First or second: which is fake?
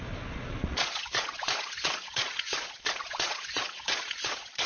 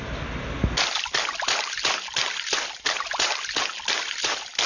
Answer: first